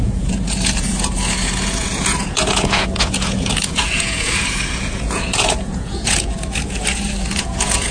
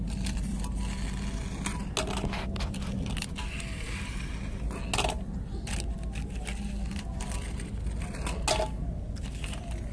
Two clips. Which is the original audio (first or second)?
second